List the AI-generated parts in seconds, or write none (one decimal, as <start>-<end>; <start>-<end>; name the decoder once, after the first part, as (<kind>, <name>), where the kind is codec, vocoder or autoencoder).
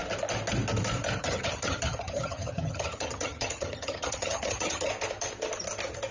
1.2-4.9 (vocoder, HiFi-GAN)